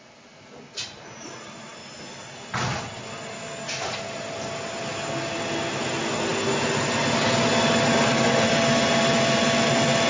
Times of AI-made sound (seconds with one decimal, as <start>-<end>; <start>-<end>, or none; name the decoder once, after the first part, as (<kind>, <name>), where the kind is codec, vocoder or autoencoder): none